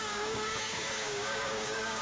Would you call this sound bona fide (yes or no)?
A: no